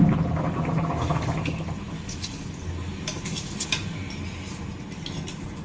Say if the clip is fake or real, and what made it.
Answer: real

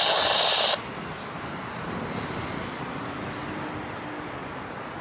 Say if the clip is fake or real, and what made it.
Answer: real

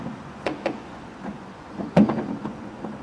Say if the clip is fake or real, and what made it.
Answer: fake, vocoder, Vocos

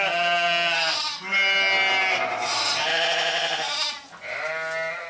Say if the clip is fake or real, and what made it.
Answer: real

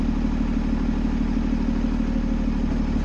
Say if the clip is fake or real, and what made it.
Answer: real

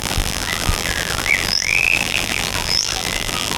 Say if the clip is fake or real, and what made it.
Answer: fake, vocoder, BigVGAN v2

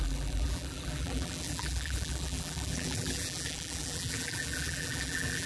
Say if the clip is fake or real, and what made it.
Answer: fake, vocoder, BigVGAN v2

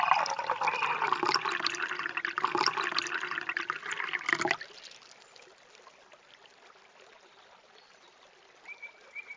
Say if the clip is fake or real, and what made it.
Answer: real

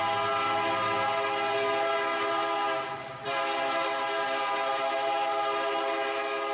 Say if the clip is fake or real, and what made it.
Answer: real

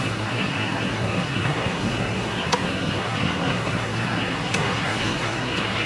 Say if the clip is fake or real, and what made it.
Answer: fake, codec, SNAC